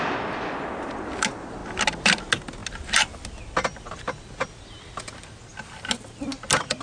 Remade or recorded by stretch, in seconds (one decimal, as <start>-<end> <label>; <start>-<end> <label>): 0.0-6.8 recorded